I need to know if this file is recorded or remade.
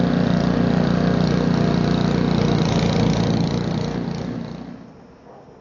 recorded